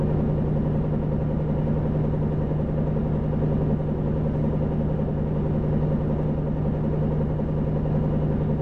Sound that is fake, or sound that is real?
real